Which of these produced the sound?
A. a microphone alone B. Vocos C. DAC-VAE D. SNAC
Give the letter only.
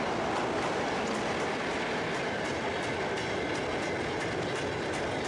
A